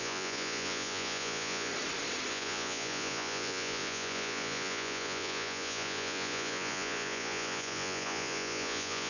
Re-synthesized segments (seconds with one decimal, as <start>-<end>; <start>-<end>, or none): 0.0-1.7; 2.3-9.1